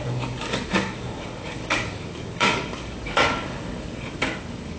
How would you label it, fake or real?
fake